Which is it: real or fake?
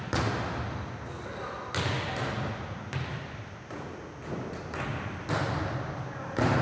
real